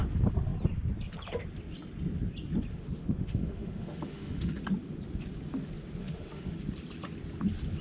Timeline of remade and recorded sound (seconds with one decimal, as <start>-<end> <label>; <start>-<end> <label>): 0.0-2.7 recorded; 2.7-4.6 remade; 4.6-6.0 recorded; 6.0-6.6 remade; 6.6-7.8 recorded